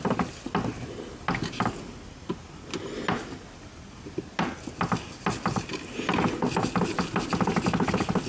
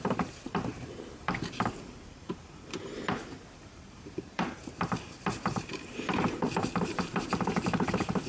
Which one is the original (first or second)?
first